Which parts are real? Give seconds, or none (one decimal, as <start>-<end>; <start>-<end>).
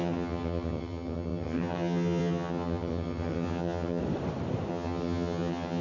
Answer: 4.0-4.7